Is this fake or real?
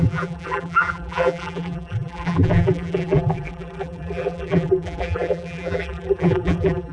fake